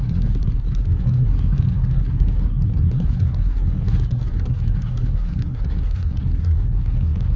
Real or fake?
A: fake